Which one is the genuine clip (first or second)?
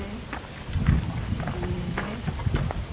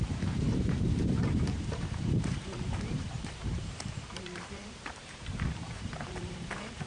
first